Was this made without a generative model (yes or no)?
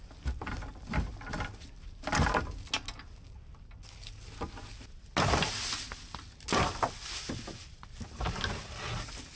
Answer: yes